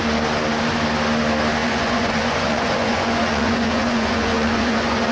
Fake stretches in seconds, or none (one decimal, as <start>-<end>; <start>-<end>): 1.6-5.1